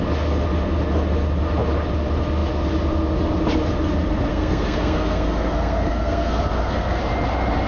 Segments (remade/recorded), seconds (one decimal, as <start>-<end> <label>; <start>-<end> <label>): 0.0-4.3 recorded; 4.3-7.0 remade; 7.0-7.7 recorded